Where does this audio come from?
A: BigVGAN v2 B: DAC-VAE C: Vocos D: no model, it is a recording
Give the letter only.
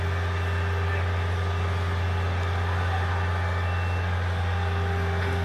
D